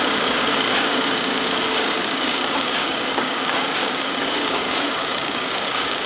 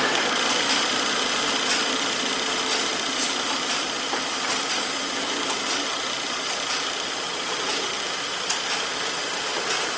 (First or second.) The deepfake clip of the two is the first